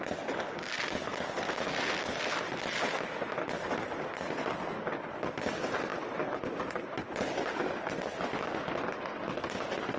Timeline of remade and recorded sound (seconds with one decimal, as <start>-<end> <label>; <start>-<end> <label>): 0.0-10.0 recorded